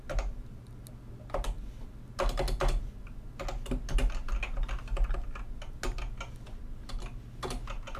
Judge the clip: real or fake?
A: real